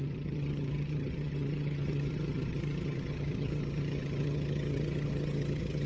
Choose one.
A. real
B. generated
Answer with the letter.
B